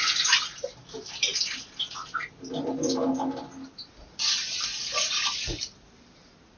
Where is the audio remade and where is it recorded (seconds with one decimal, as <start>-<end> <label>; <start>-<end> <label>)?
0.0-6.6 recorded